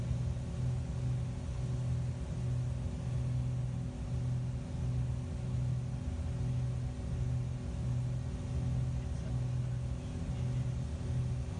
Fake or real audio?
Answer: real